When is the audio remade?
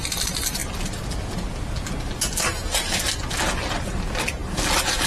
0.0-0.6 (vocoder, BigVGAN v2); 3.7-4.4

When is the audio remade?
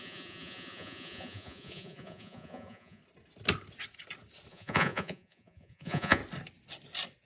0.0-3.0 (vocoder, Vocos); 4.5-6.2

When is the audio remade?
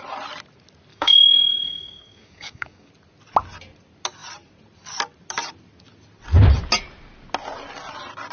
0.9-2.9 (codec, DAC)